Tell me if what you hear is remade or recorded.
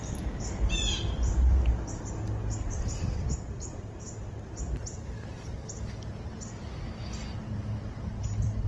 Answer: recorded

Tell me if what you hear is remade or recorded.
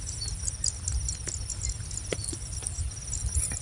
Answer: recorded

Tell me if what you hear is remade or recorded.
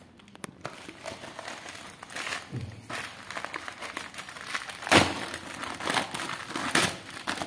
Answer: recorded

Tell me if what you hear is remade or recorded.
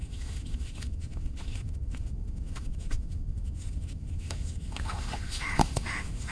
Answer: remade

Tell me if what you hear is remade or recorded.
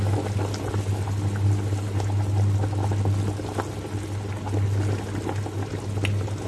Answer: recorded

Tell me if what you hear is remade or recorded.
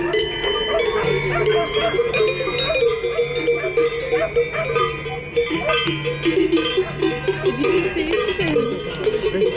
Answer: recorded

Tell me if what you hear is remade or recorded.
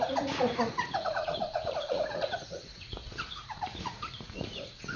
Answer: remade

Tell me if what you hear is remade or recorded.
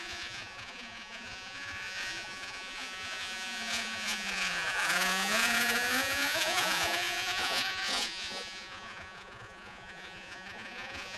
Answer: remade